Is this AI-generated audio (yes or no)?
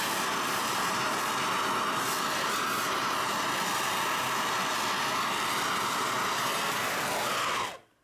no